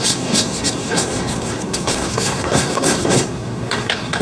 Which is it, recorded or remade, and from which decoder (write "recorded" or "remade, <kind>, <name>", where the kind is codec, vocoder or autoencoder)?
remade, codec, SNAC